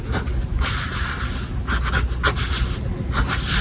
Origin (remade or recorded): recorded